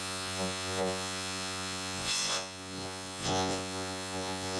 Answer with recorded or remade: remade